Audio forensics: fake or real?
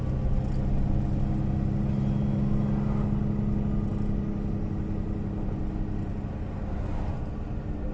real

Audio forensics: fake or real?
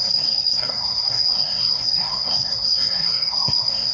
fake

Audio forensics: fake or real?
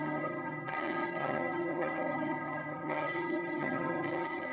fake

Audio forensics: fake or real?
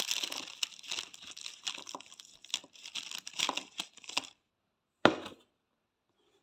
real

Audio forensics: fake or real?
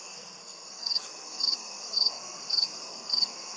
fake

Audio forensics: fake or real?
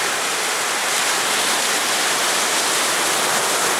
real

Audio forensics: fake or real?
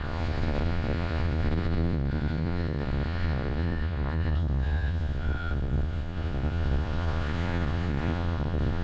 fake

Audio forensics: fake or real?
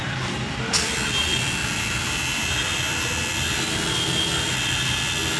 fake